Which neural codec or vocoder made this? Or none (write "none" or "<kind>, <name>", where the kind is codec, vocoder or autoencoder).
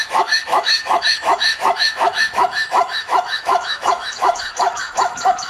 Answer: autoencoder, DAC-VAE